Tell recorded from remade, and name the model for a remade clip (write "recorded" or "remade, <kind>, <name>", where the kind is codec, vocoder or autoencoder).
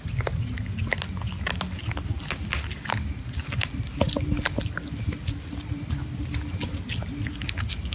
recorded